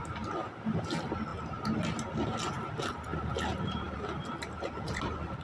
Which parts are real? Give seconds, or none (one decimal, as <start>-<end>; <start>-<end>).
0.0-5.4